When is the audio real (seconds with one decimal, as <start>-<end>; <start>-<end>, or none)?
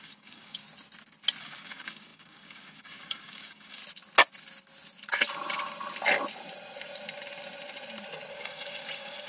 0.6-1.4; 3.8-8.3